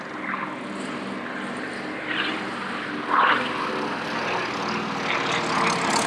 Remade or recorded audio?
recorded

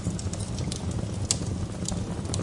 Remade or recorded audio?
recorded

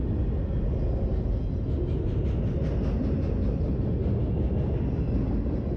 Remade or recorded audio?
recorded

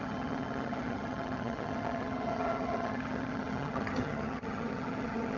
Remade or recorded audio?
remade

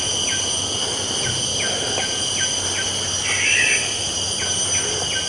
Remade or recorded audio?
recorded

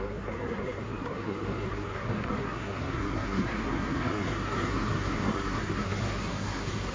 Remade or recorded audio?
remade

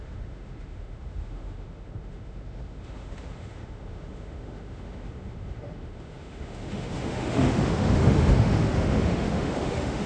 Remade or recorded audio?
remade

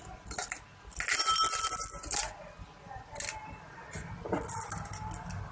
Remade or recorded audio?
recorded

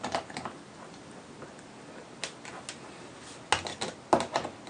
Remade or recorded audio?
recorded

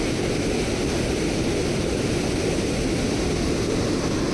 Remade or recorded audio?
recorded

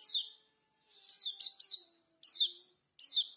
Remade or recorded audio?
recorded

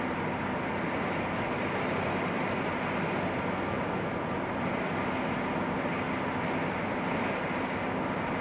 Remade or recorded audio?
recorded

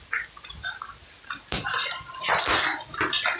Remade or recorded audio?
recorded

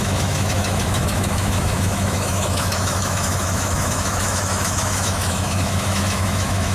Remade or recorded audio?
remade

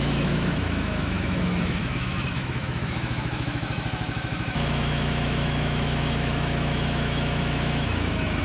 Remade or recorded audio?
remade